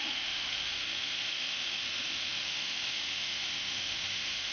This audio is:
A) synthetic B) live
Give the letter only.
A